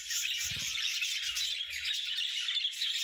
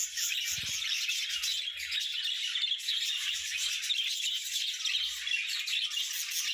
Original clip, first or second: second